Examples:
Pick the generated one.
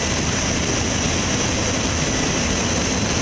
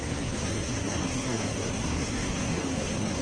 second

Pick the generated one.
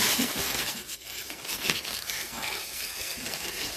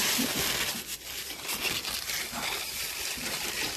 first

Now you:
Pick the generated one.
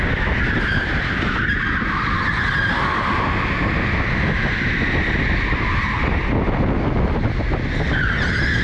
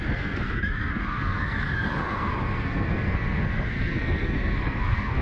second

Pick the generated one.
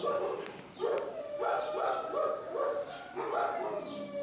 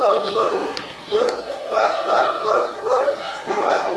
second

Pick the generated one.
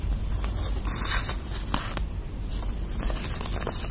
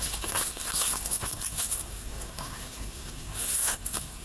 second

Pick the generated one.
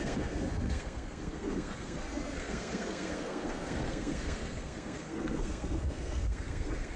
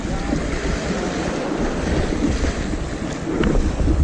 first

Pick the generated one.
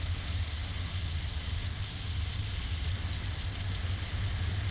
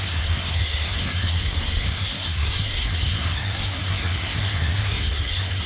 second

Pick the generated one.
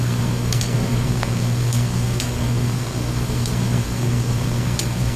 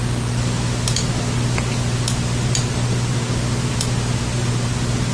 first